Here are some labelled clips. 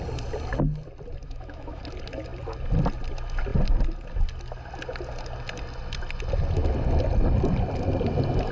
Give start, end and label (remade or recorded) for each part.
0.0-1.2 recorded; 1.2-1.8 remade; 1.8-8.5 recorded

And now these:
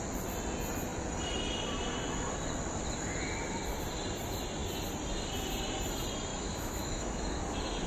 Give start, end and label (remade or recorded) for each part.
0.0-6.3 recorded; 6.3-7.3 remade; 7.3-7.9 recorded

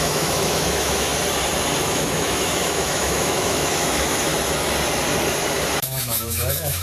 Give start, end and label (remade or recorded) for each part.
0.0-1.1 remade; 1.1-1.8 recorded; 1.8-4.3 remade; 4.3-5.8 recorded; 5.8-6.8 remade